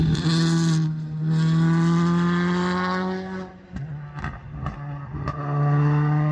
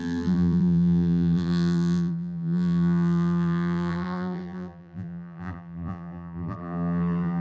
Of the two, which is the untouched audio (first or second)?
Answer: first